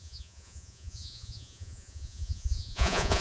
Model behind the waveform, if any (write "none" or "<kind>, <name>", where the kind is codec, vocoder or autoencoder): vocoder, Vocos